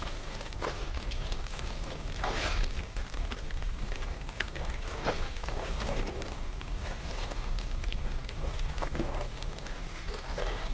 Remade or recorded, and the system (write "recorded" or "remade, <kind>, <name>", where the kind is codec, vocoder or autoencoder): remade, codec, DAC